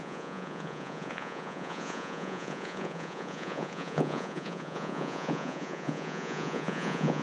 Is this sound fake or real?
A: fake